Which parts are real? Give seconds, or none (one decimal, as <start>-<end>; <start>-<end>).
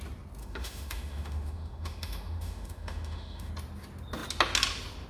0.0-0.4; 3.5-5.1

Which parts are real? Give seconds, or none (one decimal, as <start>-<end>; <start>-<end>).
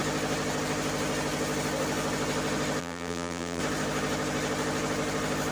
0.0-2.8; 3.6-5.5